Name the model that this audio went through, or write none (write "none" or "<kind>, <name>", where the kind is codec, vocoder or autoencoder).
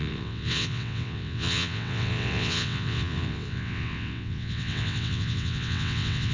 vocoder, WaveNeXt